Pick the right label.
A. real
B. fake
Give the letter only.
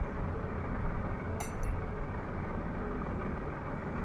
A